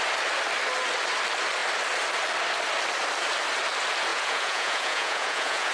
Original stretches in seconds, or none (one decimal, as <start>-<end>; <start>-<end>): 0.0-4.1

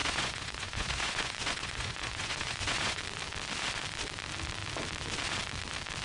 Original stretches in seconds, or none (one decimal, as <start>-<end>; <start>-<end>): 3.0-6.0